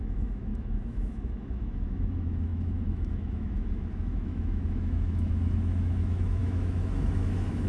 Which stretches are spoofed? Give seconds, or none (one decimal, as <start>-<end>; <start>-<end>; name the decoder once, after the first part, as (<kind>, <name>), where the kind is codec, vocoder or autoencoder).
0.0-7.7 (autoencoder, DAC-VAE)